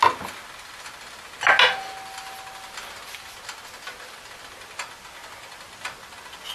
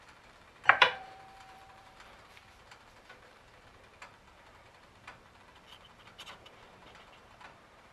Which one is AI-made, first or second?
second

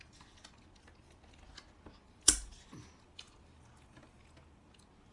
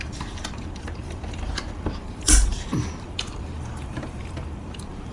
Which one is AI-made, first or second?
second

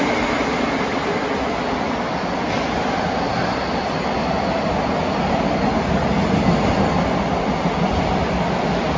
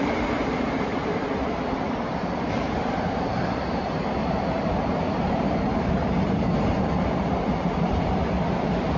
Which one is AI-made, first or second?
second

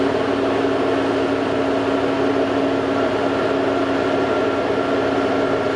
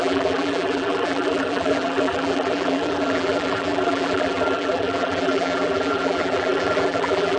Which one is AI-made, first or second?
second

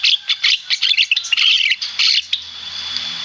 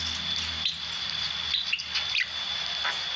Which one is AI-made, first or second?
first